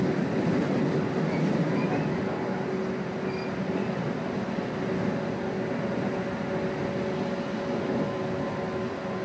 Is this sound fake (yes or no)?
no